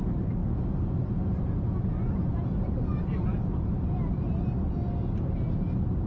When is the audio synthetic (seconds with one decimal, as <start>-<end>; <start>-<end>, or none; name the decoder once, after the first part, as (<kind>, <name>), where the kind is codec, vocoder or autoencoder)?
0.0-0.4 (vocoder, BigVGAN v2); 2.1-3.3; 5.5-6.1